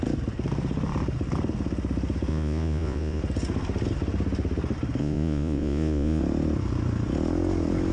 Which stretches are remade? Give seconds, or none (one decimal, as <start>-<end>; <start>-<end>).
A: 2.3-3.2; 5.0-6.2